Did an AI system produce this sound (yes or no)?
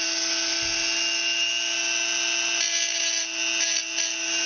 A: no